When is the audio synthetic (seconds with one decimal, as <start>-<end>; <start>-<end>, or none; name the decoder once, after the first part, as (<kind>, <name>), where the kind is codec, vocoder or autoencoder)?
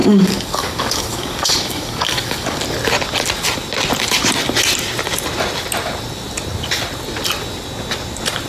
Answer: 0.0-2.6 (codec, DAC)